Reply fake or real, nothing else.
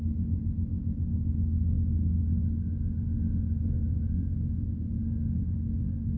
real